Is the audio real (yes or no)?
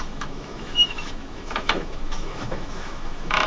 no